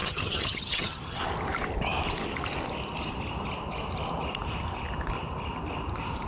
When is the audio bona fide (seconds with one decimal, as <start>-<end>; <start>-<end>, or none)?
1.2-6.3